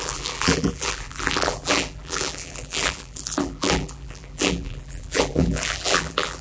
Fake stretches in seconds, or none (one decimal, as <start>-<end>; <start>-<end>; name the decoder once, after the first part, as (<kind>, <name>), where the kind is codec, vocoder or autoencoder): 0.0-6.4 (vocoder, BigVGAN v2)